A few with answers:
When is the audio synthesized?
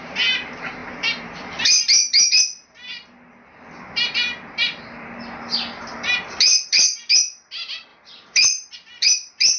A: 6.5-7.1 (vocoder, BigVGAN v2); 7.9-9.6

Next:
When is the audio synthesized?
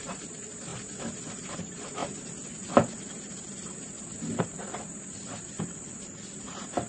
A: none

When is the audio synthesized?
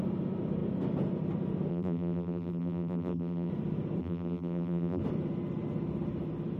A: 1.7-3.5 (vocoder, BigVGAN v2); 4.0-5.0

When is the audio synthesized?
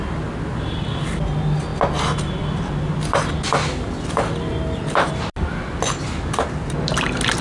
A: none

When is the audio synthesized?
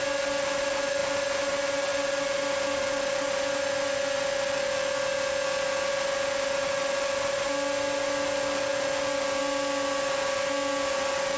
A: none